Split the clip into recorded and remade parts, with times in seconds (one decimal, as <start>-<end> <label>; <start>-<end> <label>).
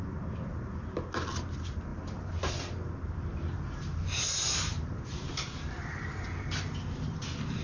0.0-1.9 recorded; 1.9-2.5 remade; 2.5-3.3 recorded; 3.3-5.7 remade; 5.7-7.6 recorded